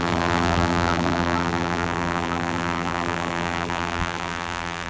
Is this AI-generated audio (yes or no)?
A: yes